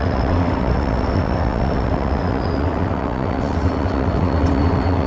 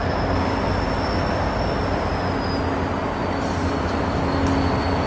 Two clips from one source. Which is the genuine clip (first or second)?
second